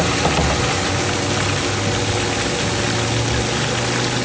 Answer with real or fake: real